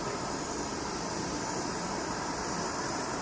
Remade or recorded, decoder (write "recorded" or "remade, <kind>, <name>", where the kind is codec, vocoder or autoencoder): remade, vocoder, BigVGAN v2